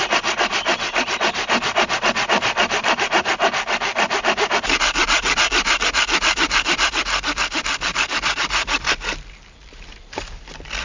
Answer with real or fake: fake